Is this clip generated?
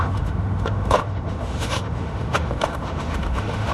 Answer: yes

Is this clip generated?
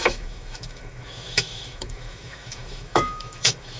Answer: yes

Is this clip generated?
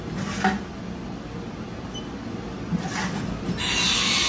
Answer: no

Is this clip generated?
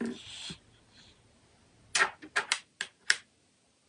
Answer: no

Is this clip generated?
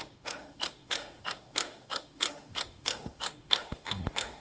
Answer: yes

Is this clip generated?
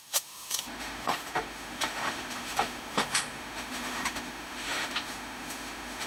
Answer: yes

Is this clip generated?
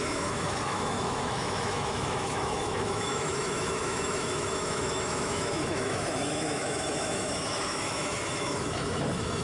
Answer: yes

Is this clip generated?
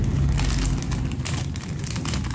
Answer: no